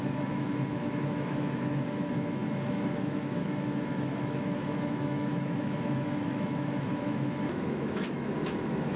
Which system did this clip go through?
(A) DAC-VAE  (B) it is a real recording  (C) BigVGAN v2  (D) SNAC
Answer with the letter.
A